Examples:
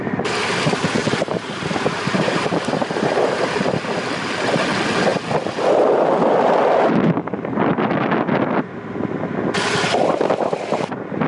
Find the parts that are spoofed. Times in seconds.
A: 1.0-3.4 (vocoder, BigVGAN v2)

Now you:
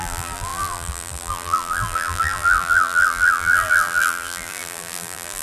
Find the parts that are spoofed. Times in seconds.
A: 0.0-5.4 (vocoder, BigVGAN v2)

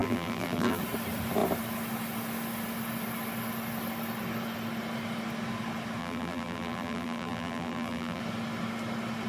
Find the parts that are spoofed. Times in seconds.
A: 0.0-0.8 (vocoder, BigVGAN v2); 6.0-8.2

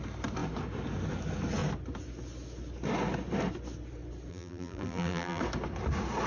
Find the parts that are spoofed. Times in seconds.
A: 4.3-5.4 (vocoder, BigVGAN v2)

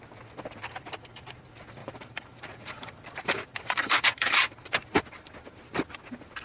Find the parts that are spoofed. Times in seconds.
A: 1.8-4.5 (vocoder, BigVGAN v2)

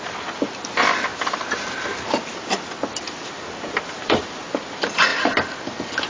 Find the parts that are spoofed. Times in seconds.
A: 2.9-4.2 (vocoder, BigVGAN v2); 5.1-5.6

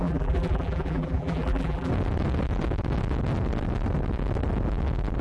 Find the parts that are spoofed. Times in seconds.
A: 0.0-1.9 (vocoder, BigVGAN v2)

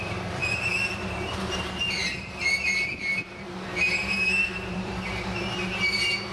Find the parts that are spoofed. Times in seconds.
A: 0.0-6.3 (vocoder, BigVGAN v2)